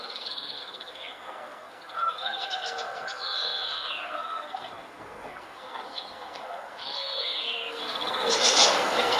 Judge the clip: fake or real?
fake